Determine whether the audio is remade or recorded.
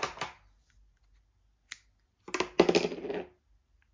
recorded